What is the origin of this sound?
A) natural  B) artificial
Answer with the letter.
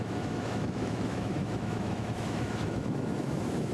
B